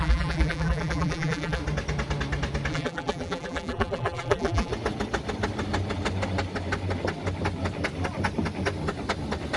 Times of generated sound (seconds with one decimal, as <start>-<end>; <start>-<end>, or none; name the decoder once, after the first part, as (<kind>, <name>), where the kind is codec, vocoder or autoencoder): 0.0-1.6 (vocoder, BigVGAN v2); 2.7-4.7